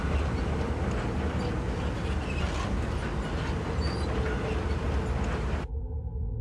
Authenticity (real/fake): real